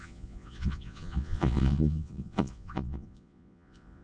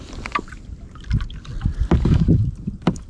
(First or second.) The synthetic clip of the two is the first